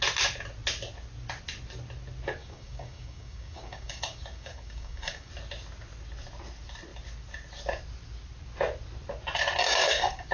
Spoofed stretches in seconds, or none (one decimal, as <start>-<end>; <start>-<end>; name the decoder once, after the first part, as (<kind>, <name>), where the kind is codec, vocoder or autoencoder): 2.4-5.3 (codec, DAC); 9.6-10.3